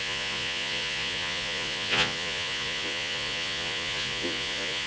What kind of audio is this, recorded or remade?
remade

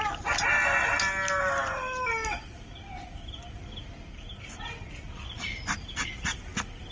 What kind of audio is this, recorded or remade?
recorded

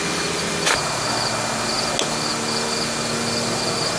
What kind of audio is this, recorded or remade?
recorded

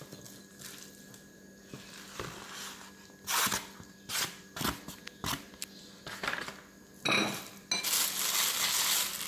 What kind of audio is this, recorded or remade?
recorded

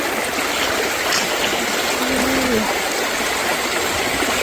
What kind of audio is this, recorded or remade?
recorded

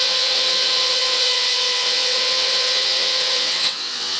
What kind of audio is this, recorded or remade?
remade